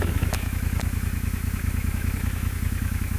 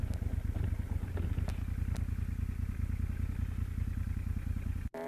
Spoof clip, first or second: first